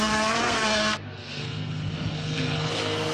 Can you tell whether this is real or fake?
fake